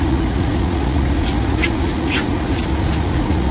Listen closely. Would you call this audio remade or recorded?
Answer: remade